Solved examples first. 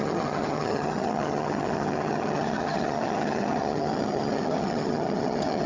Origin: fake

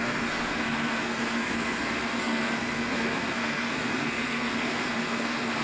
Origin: fake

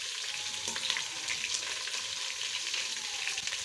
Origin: real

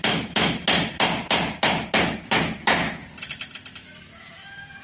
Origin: real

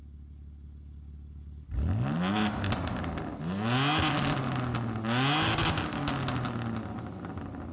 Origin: real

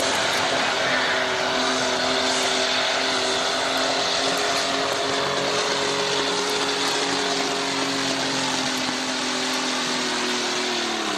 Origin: real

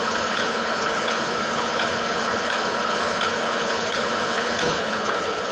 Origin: fake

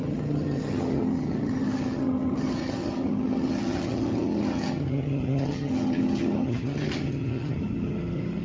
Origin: fake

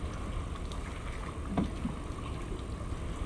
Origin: real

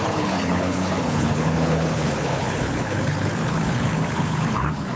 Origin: fake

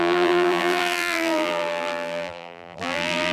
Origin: fake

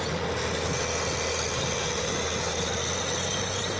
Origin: real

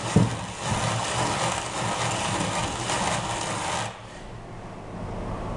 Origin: real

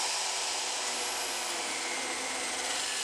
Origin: real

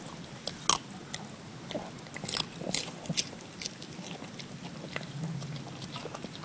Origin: real